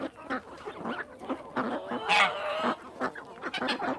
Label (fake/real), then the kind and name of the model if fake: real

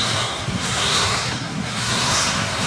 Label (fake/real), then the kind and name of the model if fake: fake, codec, SNAC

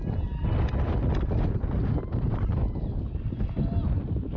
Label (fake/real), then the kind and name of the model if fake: real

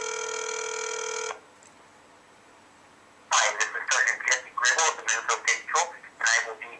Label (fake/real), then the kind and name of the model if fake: real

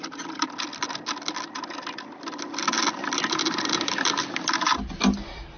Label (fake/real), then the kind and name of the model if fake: real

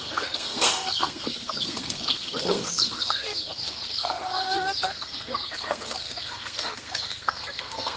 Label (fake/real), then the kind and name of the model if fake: fake, codec, SNAC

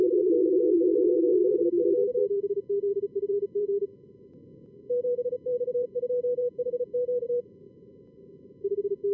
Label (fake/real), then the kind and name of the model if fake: fake, vocoder, Vocos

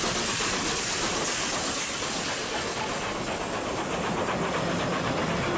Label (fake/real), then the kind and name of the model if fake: real